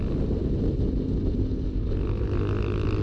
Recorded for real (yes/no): yes